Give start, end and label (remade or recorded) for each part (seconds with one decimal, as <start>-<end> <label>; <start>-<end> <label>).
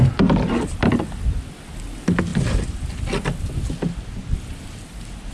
0.0-5.3 recorded